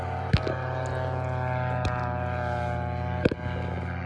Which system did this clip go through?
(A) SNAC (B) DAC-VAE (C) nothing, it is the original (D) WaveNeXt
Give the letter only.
C